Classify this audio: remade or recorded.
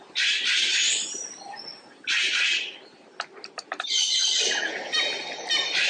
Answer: recorded